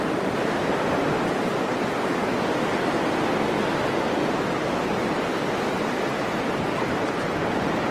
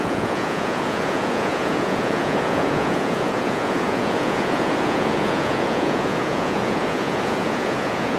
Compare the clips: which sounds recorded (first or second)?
first